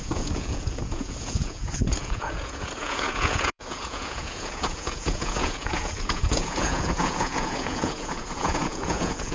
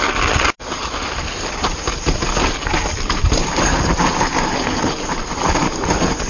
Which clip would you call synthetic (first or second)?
first